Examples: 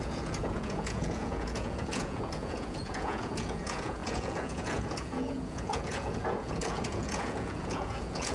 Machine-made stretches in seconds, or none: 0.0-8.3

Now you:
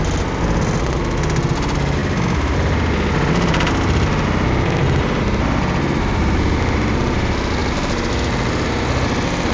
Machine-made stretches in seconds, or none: none

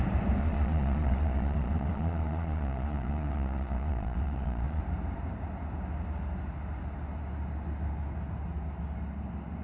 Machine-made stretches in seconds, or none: 0.4-4.8

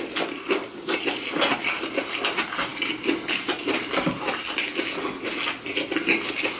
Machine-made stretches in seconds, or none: none

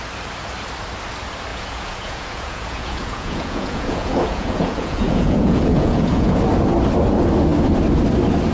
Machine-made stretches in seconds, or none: 1.5-6.4